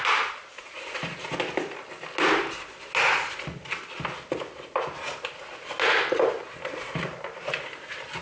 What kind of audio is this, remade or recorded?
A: recorded